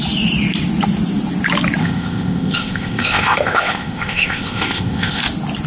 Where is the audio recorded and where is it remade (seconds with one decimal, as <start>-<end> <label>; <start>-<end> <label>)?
0.0-1.8 recorded; 1.8-5.2 remade; 5.2-5.7 recorded